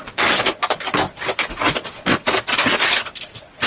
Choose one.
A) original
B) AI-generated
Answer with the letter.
A